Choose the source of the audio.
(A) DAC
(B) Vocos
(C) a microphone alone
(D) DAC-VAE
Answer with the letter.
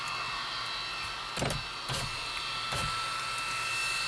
C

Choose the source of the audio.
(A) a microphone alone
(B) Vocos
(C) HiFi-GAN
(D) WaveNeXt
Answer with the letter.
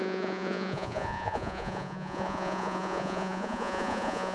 B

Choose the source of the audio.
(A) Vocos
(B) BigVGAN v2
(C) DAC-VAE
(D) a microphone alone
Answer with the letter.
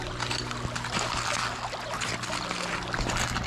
D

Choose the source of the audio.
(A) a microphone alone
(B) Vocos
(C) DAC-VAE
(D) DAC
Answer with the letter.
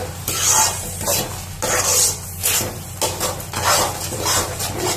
A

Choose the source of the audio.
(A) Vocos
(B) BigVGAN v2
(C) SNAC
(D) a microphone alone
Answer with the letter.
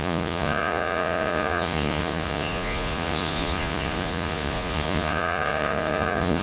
A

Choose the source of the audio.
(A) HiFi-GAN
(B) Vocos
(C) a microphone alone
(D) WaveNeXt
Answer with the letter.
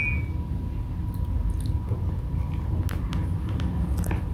C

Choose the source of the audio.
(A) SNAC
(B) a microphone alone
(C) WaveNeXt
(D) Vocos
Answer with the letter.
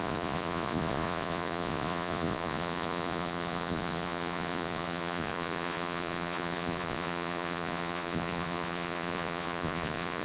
D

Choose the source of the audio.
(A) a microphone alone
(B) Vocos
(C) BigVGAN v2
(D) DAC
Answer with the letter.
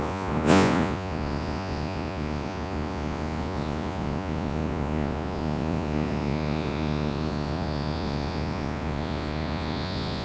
B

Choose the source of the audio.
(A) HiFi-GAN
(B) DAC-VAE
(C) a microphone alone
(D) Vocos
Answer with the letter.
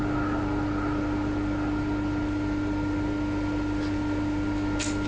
C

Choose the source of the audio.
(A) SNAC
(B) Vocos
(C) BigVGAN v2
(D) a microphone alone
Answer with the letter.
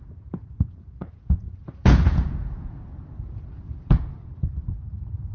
B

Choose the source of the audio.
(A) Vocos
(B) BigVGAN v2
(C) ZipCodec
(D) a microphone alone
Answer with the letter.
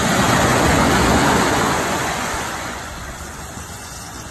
A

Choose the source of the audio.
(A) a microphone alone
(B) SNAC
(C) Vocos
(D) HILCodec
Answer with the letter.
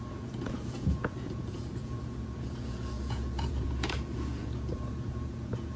C